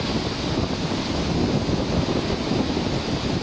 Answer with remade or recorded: recorded